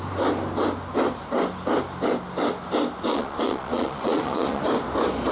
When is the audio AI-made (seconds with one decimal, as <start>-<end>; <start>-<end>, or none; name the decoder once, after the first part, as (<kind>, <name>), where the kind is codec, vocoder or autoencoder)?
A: 3.1-4.6 (vocoder, Vocos)